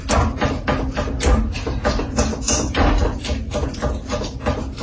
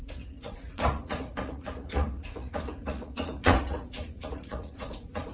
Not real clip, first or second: second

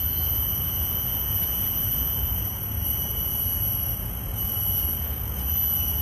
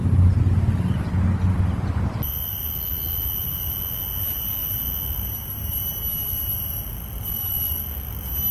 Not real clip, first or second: first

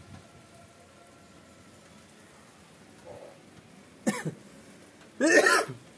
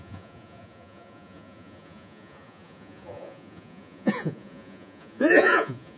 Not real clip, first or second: second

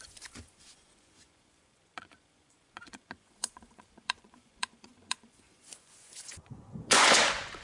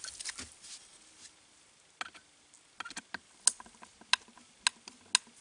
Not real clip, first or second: first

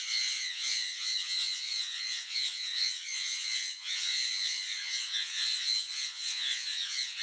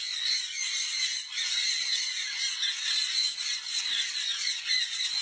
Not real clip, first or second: first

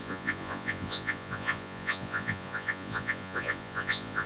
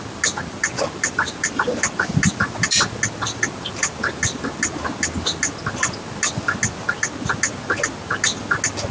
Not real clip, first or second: first